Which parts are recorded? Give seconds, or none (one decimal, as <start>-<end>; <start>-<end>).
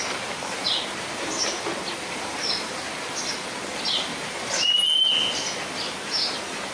0.0-6.7